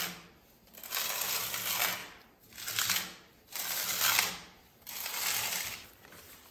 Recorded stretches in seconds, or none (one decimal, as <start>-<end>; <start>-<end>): 0.0-6.5